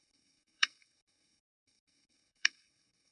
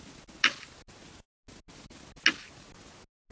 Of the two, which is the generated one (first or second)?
first